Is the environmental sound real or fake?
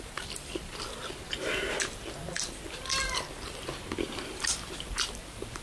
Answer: real